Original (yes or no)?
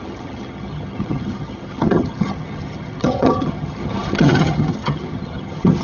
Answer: no